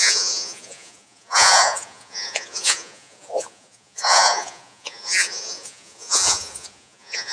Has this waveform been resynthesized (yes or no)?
yes